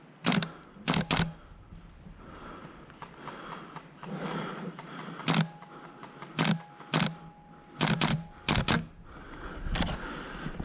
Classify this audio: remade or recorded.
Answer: recorded